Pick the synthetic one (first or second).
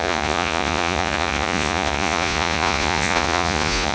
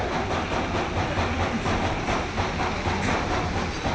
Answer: first